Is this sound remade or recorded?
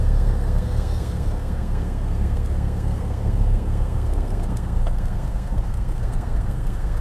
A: remade